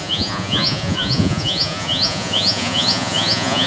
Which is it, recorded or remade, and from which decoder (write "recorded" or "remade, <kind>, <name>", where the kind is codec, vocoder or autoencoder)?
remade, vocoder, Vocos